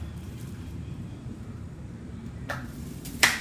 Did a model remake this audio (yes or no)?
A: yes